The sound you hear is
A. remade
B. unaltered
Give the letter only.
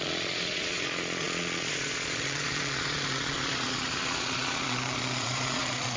A